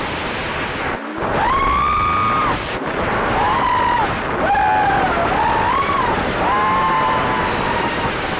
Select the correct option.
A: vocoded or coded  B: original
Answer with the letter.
B